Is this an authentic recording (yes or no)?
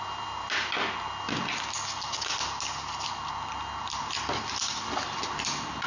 yes